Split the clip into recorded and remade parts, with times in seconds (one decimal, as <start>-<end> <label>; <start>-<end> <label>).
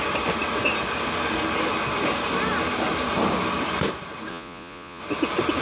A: 0.0-4.3 recorded; 4.3-5.0 remade; 5.0-5.6 recorded